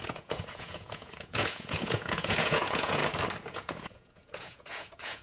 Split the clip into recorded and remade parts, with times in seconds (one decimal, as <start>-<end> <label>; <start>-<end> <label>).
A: 0.0-3.0 remade; 3.0-3.5 recorded; 3.5-5.2 remade